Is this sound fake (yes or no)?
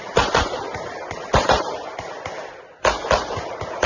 no